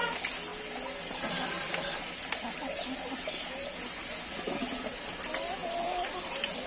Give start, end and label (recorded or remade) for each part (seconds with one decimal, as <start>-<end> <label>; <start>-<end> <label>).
0.0-6.7 recorded